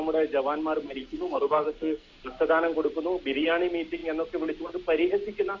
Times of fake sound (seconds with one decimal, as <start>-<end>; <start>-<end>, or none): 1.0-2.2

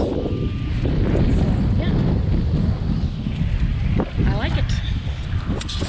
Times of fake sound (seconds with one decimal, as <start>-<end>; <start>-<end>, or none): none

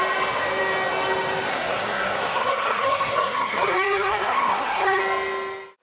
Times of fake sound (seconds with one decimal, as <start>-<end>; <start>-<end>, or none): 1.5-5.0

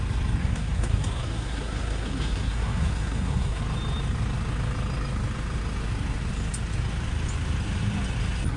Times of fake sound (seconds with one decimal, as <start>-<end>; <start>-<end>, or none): 0.4-3.6

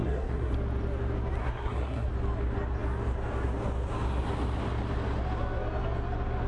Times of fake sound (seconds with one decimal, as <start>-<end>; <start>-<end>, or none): 0.0-0.5; 1.4-2.1